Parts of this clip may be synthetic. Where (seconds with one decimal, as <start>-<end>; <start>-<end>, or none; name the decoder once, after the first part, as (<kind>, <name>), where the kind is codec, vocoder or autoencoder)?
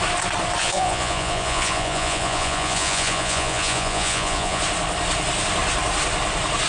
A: 0.6-4.6 (vocoder, Vocos)